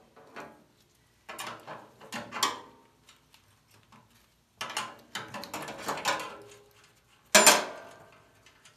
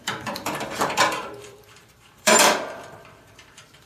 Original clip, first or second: first